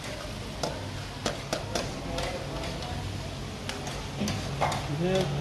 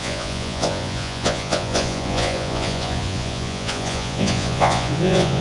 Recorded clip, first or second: first